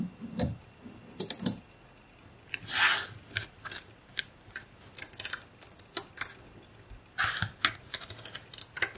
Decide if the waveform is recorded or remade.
recorded